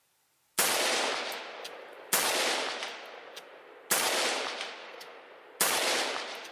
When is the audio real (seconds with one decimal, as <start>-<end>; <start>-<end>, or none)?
0.0-4.8; 5.3-6.5